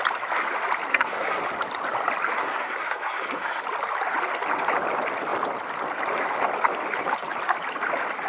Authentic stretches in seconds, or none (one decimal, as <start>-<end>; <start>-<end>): 0.0-0.9; 1.4-2.4; 3.6-8.3